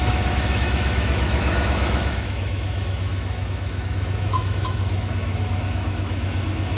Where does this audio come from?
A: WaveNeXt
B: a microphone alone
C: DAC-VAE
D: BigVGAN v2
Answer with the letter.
C